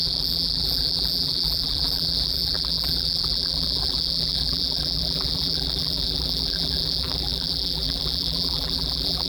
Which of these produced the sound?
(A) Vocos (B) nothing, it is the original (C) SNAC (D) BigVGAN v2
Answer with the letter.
D